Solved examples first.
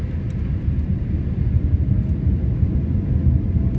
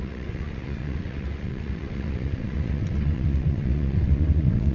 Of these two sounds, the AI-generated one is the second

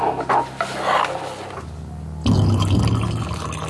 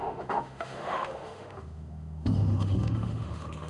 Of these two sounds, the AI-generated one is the second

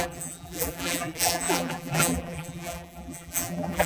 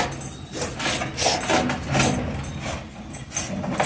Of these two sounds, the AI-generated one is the first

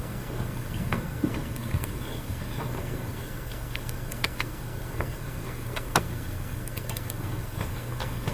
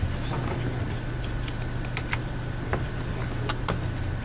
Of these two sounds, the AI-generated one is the first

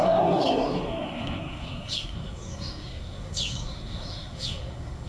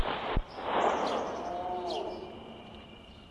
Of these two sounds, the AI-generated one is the first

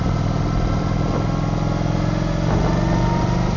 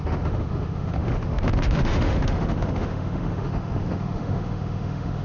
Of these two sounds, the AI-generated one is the second